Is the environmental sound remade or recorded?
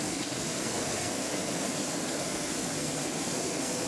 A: remade